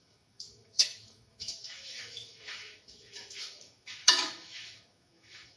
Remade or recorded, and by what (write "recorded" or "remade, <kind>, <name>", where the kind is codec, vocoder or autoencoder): remade, autoencoder, DAC-VAE